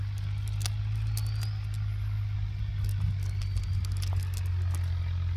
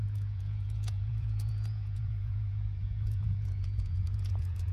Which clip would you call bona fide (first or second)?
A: first